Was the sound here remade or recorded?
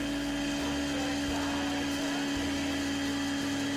recorded